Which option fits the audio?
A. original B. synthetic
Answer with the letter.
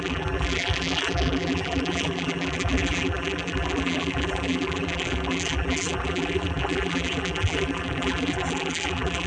B